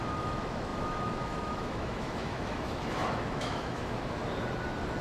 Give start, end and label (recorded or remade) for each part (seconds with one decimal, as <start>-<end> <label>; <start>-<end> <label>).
0.0-4.2 remade; 4.2-5.0 recorded